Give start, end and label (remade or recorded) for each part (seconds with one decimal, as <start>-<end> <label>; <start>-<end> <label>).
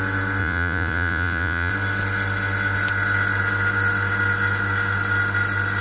0.0-0.4 recorded; 0.4-1.7 remade; 1.7-5.8 recorded